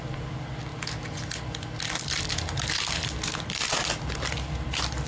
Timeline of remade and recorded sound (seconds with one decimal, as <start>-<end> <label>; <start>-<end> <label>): 0.0-5.1 recorded